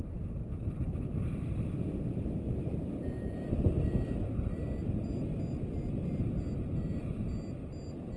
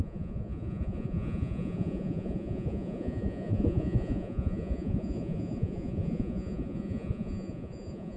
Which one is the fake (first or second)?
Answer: second